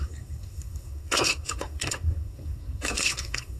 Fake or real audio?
fake